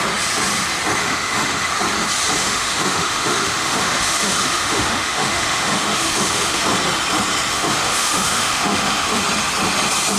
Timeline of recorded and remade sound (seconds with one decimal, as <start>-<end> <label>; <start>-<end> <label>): 0.0-1.0 recorded; 1.0-1.7 remade; 1.7-2.4 recorded; 2.4-6.6 remade; 6.6-7.5 recorded; 7.5-9.2 remade; 9.2-10.2 recorded